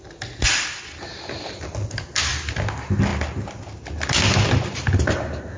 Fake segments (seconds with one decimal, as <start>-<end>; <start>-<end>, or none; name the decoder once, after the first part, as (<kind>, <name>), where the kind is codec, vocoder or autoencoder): none